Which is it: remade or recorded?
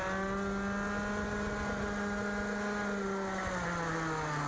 recorded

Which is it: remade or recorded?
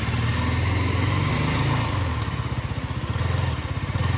recorded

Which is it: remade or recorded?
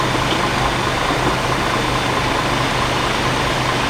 recorded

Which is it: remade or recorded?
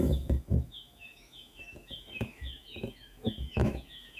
remade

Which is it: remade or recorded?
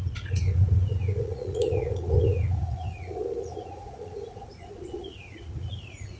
remade